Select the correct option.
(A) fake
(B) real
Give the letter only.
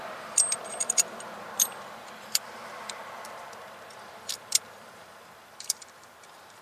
A